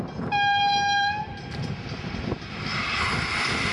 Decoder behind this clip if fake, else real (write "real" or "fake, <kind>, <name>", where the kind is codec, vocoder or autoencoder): real